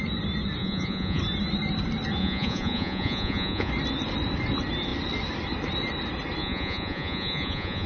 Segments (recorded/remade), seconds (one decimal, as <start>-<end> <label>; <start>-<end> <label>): 0.0-0.6 recorded; 0.6-1.2 remade; 1.2-2.2 recorded; 2.2-3.7 remade; 3.7-6.4 recorded; 6.4-7.9 remade